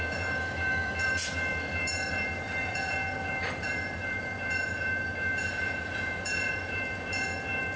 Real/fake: fake